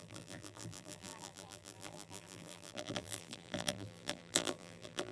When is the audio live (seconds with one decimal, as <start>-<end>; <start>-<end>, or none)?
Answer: none